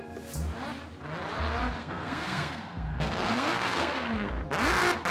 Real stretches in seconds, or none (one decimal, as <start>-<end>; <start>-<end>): 0.0-1.8; 4.3-5.1